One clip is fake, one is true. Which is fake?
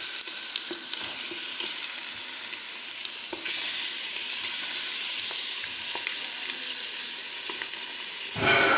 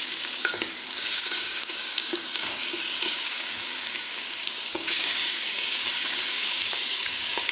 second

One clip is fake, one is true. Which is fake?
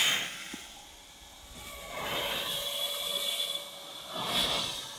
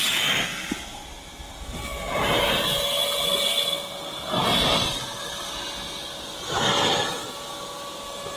first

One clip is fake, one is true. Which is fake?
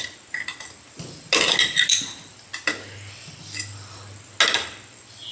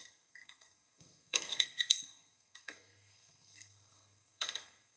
second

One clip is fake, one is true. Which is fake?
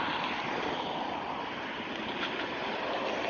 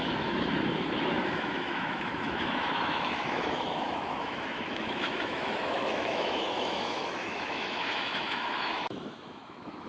second